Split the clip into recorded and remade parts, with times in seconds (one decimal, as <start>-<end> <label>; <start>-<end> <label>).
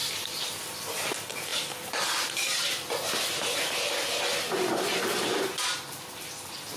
0.0-6.8 recorded